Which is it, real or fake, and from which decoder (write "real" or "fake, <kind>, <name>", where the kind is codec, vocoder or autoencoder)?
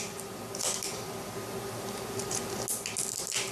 real